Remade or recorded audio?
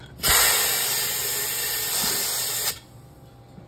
recorded